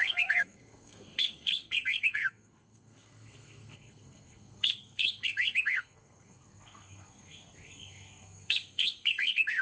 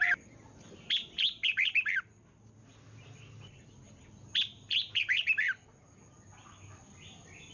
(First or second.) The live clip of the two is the second